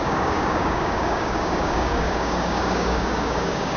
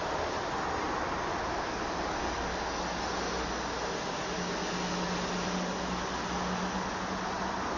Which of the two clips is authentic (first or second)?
second